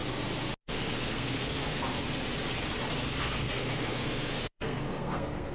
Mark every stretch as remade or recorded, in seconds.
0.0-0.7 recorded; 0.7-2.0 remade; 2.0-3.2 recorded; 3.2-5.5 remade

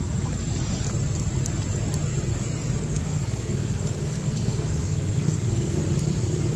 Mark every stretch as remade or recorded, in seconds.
0.0-2.3 recorded; 2.3-5.8 remade; 5.8-6.6 recorded

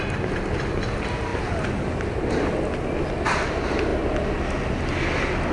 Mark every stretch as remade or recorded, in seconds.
0.0-5.5 recorded

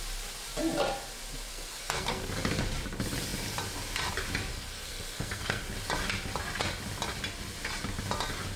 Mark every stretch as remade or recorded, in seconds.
0.0-1.5 recorded; 1.5-2.6 remade; 2.6-4.5 recorded; 4.5-5.6 remade; 5.6-8.6 recorded

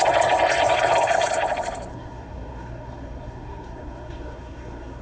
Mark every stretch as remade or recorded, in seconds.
0.0-1.9 recorded; 1.9-5.0 remade

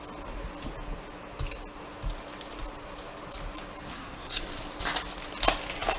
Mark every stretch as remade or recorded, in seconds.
0.0-3.9 recorded; 3.9-4.4 remade; 4.4-6.0 recorded